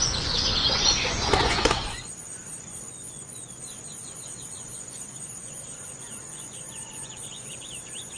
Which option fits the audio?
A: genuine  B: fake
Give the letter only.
B